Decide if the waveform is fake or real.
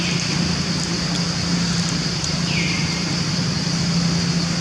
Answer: real